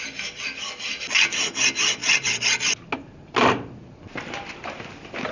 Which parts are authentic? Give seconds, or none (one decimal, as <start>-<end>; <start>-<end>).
0.0-5.3